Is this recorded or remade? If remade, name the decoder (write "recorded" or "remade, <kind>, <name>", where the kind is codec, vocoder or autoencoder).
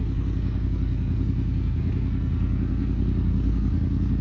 remade, codec, SNAC